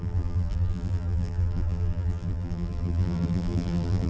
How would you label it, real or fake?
fake